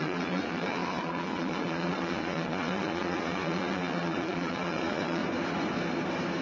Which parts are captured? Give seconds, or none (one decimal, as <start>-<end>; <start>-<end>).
5.2-6.4